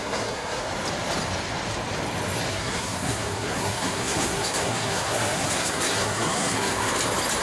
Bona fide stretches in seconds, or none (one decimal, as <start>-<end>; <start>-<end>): 0.6-2.5; 6.9-7.4